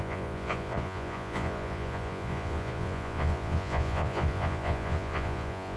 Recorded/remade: remade